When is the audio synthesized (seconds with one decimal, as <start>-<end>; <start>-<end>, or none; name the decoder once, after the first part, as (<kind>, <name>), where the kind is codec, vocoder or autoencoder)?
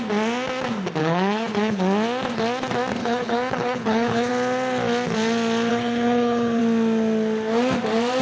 1.0-1.8 (codec, HILCodec); 3.0-4.3; 5.7-6.6